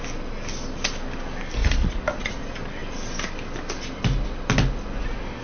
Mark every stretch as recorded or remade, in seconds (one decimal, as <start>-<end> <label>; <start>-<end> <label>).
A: 0.0-1.6 recorded; 1.6-2.4 remade; 2.4-5.4 recorded